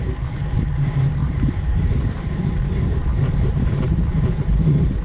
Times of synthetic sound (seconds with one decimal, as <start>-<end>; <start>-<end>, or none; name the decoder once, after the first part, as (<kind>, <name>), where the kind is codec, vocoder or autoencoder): 1.2-2.6 (vocoder, BigVGAN v2); 3.0-5.0